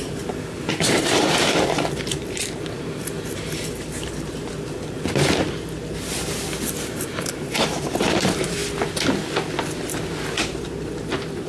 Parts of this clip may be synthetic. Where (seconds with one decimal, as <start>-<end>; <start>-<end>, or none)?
0.0-4.5; 6.9-8.6; 10.3-11.5

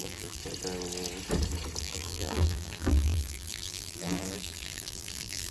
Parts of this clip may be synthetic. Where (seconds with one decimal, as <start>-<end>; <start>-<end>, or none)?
0.0-0.4; 1.8-5.5

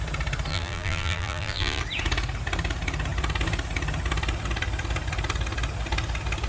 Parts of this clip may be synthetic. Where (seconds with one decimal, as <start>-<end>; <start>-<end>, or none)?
0.5-1.8

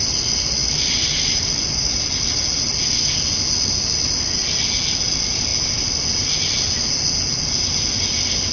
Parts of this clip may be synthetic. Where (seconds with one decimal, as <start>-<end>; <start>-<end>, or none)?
0.6-2.0

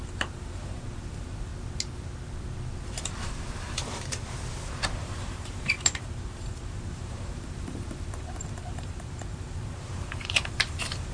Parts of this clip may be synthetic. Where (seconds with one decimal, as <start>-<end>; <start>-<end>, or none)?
0.0-1.5; 5.0-11.1

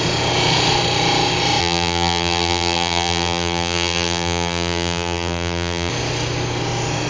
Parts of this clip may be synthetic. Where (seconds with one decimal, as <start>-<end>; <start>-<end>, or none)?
1.6-5.9

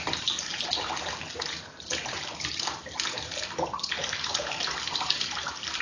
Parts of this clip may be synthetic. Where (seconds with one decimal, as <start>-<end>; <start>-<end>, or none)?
0.0-5.8